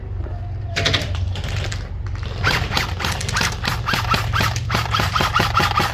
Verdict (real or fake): fake